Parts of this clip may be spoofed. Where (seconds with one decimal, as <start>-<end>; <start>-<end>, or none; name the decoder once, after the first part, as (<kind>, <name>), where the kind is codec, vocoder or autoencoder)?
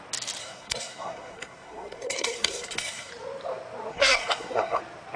0.4-3.1 (codec, SNAC); 3.9-4.8